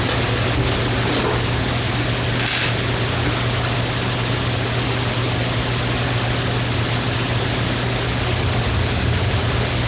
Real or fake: real